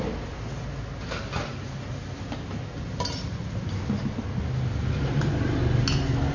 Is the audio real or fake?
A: real